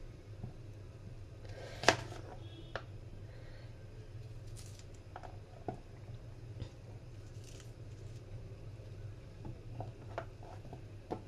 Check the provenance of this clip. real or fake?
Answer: real